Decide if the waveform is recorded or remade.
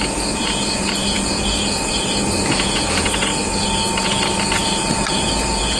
remade